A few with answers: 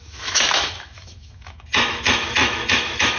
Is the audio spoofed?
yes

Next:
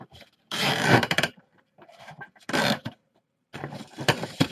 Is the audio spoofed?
yes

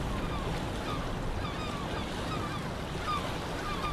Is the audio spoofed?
no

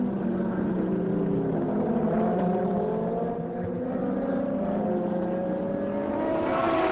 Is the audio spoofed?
no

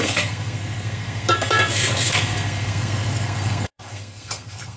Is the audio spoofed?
yes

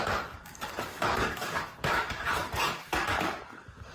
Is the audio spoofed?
yes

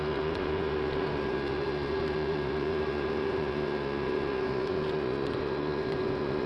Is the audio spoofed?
yes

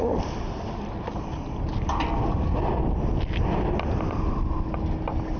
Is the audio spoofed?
no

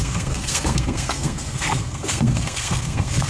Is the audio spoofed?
yes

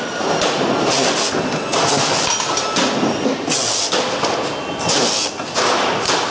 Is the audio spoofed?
no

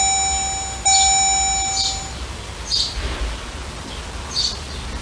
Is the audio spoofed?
no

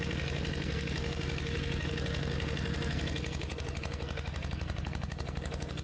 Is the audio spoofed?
yes